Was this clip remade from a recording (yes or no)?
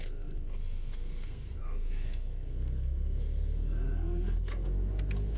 yes